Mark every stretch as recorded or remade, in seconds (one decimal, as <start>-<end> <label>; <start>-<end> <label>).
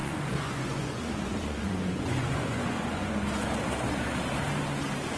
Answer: 0.0-3.1 remade; 3.1-5.2 recorded